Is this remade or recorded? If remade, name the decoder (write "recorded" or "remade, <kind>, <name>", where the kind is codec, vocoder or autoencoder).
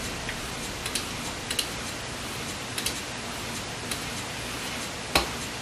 recorded